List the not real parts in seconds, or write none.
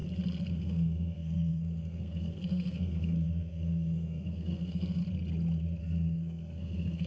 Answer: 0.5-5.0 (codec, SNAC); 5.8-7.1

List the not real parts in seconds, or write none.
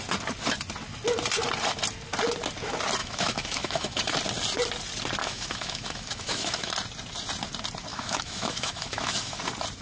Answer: 3.0-4.0 (autoencoder, DAC-VAE); 5.2-6.7; 7.9-9.4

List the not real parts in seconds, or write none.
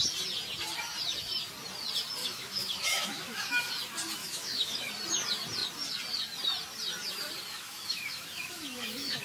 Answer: 2.2-3.7 (autoencoder, DAC-VAE); 4.2-4.9; 7.5-9.2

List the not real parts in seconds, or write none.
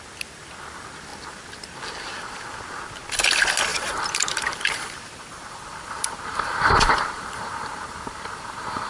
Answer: 3.7-8.9 (vocoder, BigVGAN v2)